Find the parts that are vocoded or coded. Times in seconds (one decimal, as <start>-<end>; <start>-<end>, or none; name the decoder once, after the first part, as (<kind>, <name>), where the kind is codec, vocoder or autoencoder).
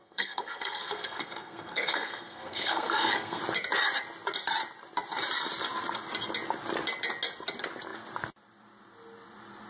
0.0-3.4 (codec, SNAC)